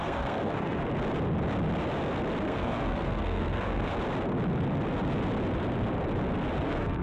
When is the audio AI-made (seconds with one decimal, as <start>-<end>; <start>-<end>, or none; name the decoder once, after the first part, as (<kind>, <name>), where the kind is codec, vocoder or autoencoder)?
0.0-0.8 (codec, SNAC); 2.4-3.9; 6.6-7.0